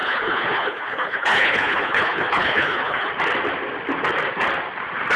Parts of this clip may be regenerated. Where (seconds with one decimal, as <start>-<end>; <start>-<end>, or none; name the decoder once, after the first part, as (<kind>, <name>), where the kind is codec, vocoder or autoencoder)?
0.0-3.1 (codec, HILCodec)

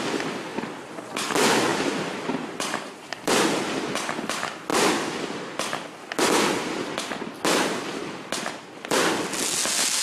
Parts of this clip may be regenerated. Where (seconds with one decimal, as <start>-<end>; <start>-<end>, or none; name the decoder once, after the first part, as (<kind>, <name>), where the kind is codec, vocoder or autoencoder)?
1.7-3.6 (vocoder, BigVGAN v2); 4.7-5.6

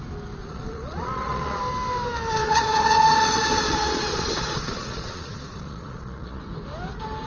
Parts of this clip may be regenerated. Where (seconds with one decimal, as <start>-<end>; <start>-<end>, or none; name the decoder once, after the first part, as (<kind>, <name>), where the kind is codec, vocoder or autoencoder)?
0.4-1.6 (vocoder, Vocos); 2.4-6.4